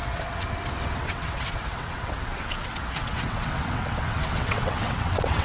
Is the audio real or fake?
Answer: fake